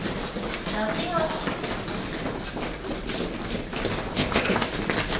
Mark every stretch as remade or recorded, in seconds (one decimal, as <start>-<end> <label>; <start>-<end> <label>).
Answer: 0.0-4.1 recorded; 4.1-4.7 remade; 4.7-5.2 recorded